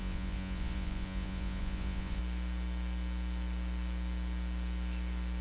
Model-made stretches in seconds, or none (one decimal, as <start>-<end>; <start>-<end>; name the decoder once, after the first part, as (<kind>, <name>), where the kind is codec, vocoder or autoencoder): 0.0-2.2 (vocoder, Vocos)